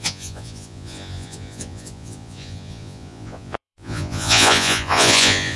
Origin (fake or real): fake